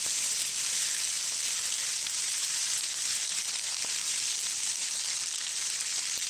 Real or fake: real